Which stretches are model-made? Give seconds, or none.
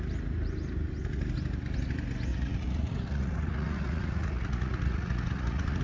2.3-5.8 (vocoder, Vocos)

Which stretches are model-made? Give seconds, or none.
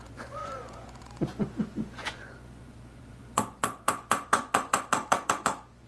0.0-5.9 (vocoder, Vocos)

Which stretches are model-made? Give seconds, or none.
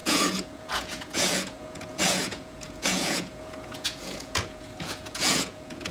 0.0-5.9 (vocoder, Vocos)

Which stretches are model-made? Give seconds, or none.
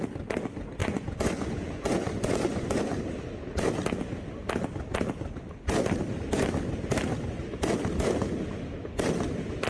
0.8-3.0 (vocoder, Vocos)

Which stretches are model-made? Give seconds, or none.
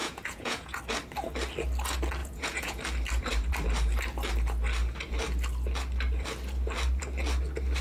0.0-0.8 (vocoder, Vocos); 2.2-2.8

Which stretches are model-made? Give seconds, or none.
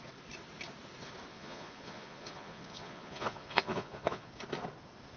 1.3-4.3 (vocoder, Vocos)